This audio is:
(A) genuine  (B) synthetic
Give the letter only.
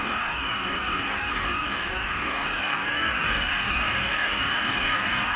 B